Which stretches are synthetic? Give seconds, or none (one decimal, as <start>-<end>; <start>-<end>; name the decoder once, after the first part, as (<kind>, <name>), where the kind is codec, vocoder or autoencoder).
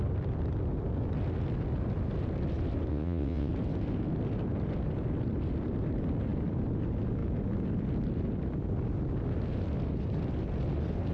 2.9-3.5 (vocoder, WaveNeXt)